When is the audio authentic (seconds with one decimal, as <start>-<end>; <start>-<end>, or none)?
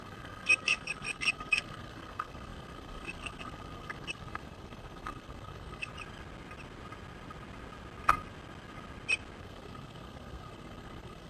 5.9-9.4